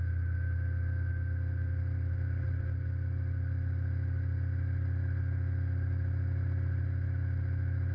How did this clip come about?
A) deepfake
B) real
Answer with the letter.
B